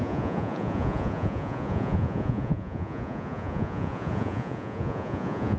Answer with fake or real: fake